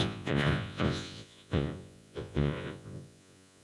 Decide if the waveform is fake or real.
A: fake